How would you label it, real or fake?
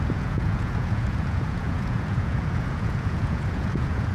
fake